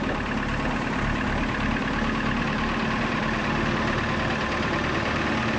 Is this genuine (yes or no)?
no